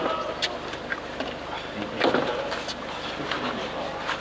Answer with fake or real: real